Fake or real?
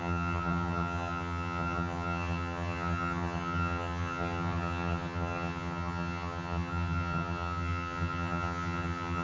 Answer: fake